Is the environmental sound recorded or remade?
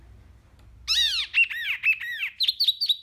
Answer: recorded